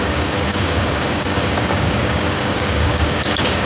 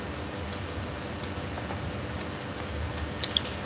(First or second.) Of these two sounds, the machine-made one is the first